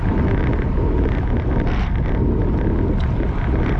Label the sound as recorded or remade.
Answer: recorded